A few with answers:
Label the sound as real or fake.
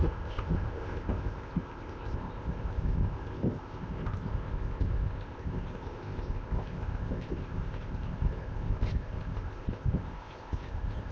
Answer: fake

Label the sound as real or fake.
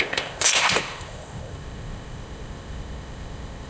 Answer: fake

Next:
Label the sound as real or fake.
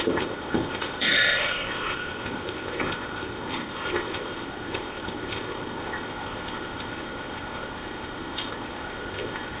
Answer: fake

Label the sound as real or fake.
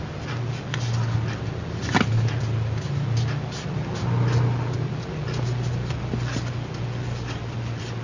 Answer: real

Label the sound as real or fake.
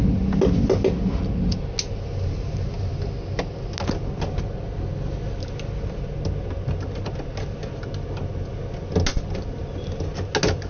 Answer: real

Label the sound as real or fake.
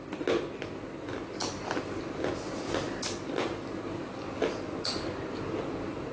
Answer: real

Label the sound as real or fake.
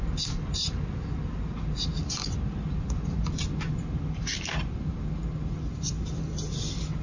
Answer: real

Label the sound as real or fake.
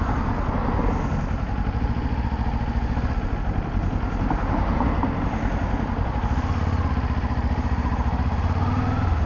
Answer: real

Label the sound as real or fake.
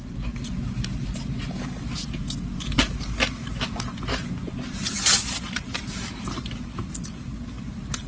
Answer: real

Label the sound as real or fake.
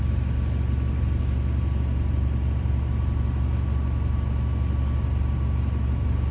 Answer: real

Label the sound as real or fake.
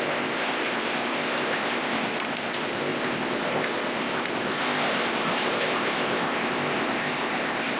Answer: fake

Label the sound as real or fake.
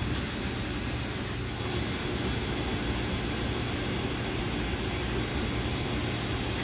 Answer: real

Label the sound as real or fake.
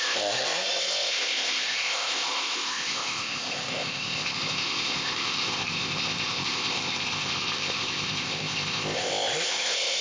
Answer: fake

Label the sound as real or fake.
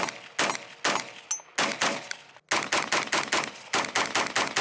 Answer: real